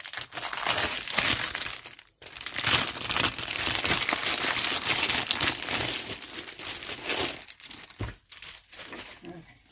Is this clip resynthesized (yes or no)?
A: no